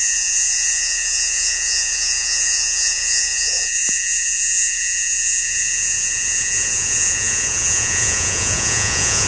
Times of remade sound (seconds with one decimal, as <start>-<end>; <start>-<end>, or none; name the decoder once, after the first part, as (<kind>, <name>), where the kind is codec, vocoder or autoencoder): 0.0-9.3 (vocoder, Vocos)